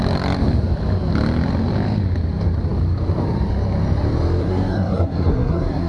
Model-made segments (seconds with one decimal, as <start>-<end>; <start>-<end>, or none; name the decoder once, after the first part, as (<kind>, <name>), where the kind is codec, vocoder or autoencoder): 4.4-5.9 (codec, SNAC)